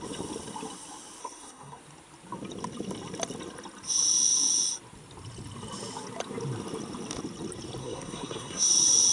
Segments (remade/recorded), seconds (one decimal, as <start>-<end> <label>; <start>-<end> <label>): 0.0-1.2 recorded; 1.2-1.8 remade; 1.8-7.8 recorded; 7.8-8.7 remade; 8.7-9.1 recorded